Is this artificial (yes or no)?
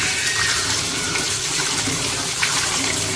yes